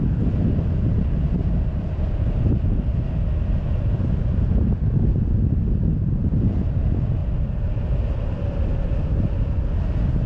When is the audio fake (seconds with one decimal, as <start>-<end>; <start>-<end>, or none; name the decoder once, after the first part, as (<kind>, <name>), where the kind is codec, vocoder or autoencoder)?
none